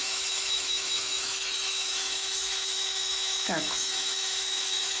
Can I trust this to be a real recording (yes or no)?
no